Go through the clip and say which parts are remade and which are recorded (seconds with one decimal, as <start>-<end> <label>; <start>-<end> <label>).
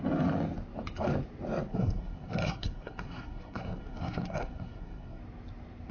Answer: 0.0-1.7 recorded; 1.7-5.2 remade; 5.2-5.9 recorded